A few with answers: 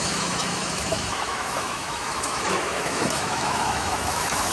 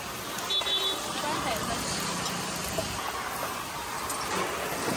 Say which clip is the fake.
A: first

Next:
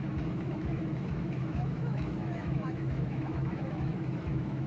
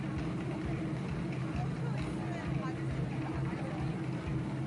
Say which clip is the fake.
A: first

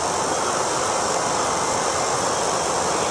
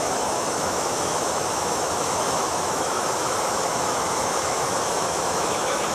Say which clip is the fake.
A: second